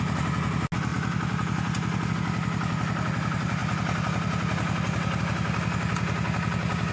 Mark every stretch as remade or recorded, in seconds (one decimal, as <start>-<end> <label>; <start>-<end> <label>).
0.0-6.9 recorded